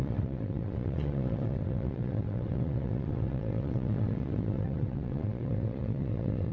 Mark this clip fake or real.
fake